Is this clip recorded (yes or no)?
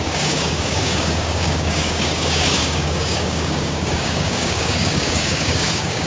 no